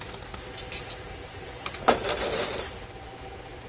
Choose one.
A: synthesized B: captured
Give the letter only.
B